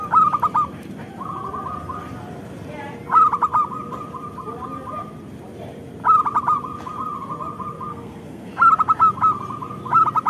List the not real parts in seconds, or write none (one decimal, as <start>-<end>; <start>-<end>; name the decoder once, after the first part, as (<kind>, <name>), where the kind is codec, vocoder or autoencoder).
7.9-8.5 (codec, SNAC)